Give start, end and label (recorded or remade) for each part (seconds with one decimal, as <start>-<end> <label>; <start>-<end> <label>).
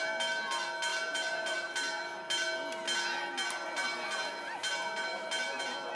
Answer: 0.0-6.0 recorded